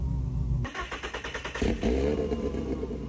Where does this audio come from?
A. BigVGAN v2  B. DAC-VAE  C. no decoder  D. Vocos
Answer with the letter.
C